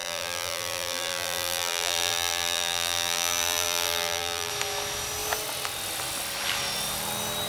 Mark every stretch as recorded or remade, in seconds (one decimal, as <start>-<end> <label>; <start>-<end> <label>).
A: 0.0-4.5 remade; 4.5-7.5 recorded